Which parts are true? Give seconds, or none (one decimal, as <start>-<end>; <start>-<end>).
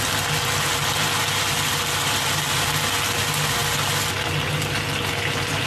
0.0-5.7